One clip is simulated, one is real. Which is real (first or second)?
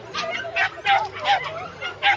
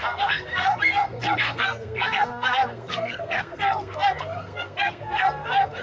first